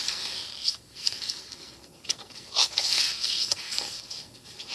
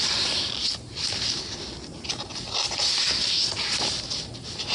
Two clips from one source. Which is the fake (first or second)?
first